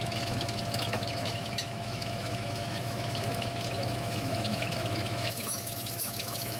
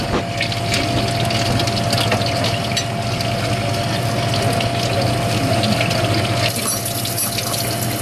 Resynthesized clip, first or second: first